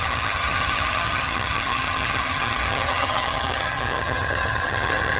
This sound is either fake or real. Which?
fake